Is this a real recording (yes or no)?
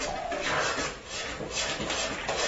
yes